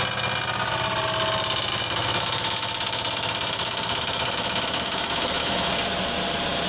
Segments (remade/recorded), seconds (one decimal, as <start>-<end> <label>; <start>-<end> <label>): 0.0-1.7 recorded; 1.7-5.7 remade; 5.7-6.7 recorded